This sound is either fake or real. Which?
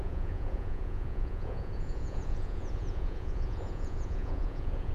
fake